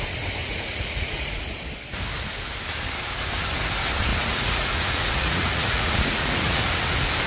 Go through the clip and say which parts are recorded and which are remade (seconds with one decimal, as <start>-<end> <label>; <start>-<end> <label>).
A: 0.0-0.4 recorded; 0.4-1.5 remade; 1.5-4.1 recorded; 4.1-6.7 remade; 6.7-7.3 recorded